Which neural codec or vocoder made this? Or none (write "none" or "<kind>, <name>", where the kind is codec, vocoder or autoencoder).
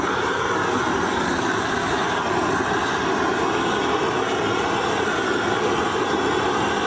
none